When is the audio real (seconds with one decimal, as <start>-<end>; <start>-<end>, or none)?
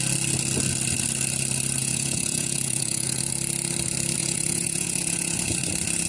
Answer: 0.0-1.8; 3.2-4.2; 5.5-6.1